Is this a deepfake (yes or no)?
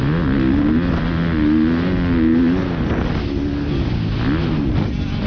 no